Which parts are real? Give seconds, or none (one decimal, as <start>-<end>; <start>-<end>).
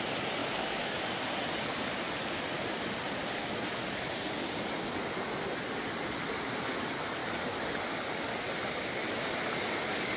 0.0-0.4; 1.0-10.2